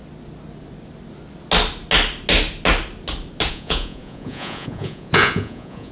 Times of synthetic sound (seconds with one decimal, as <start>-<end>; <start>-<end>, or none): 3.5-5.9